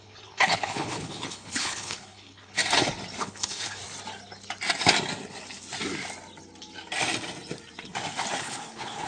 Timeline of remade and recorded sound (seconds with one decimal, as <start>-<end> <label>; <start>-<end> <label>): 0.0-2.6 remade; 2.6-3.2 recorded; 3.2-3.8 remade; 3.8-8.4 recorded; 8.4-9.1 remade